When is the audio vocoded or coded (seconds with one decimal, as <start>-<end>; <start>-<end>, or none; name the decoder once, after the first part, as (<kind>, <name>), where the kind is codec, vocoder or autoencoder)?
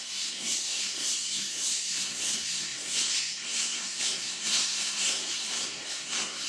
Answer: 0.0-6.5 (codec, SNAC)